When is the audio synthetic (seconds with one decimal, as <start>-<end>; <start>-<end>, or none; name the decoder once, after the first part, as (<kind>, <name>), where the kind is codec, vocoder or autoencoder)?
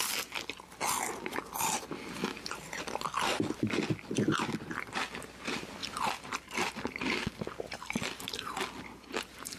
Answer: none